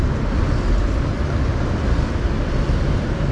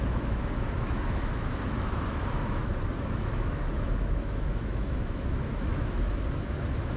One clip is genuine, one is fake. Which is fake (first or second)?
second